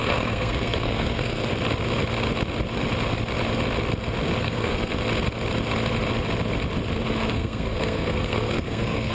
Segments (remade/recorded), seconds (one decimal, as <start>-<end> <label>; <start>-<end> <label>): 0.0-1.5 remade; 1.5-4.4 recorded; 4.4-4.9 remade; 4.9-7.3 recorded; 7.3-9.1 remade